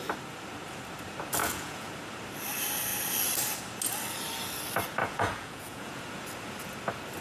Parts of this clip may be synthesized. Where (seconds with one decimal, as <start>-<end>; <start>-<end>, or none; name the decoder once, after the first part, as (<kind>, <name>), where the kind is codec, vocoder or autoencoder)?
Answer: 1.4-1.9 (vocoder, Vocos); 5.0-6.0

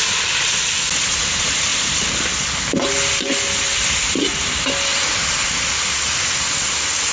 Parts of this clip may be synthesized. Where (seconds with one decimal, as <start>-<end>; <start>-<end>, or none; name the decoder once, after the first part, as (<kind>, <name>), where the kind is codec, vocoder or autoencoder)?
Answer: none

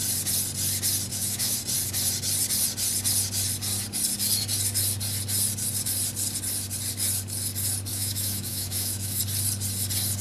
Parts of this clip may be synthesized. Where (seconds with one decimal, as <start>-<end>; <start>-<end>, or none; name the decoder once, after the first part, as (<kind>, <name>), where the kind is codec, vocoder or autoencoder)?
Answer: 1.1-1.6 (autoencoder, DAC-VAE); 7.9-9.2

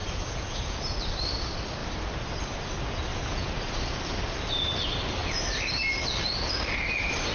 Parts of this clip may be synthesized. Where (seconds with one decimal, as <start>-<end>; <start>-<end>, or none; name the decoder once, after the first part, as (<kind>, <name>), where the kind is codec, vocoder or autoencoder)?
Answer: 0.0-0.8 (vocoder, Vocos); 3.1-3.8

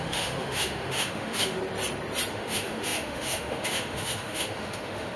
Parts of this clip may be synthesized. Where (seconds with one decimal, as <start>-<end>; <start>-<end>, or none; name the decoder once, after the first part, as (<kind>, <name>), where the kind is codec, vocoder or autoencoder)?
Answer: 0.0-1.6 (autoencoder, DAC-VAE); 2.3-5.2

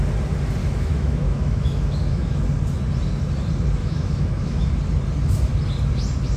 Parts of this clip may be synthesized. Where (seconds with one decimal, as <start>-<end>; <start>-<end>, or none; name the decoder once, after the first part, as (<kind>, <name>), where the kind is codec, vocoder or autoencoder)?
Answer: 0.6-2.4 (autoencoder, DAC-VAE); 3.8-4.7